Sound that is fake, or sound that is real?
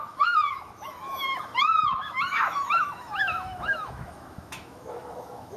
fake